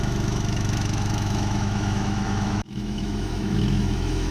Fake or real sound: fake